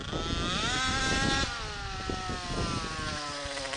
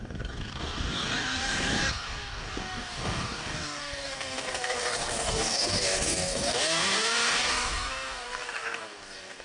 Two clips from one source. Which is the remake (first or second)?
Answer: second